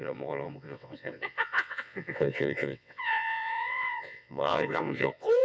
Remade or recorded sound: remade